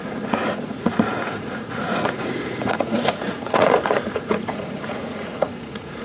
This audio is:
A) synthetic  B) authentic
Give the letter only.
A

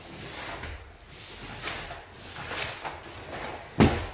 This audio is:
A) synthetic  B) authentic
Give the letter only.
B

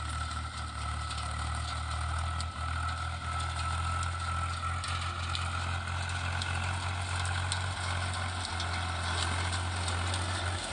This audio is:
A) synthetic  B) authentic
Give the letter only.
B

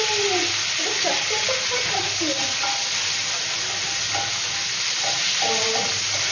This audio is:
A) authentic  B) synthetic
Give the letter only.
A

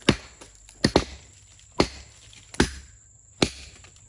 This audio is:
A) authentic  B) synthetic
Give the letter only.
A